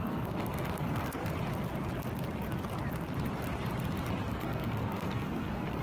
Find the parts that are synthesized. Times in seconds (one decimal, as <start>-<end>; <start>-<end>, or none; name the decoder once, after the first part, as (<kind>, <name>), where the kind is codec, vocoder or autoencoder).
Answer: 0.0-1.2 (codec, SNAC); 4.3-5.8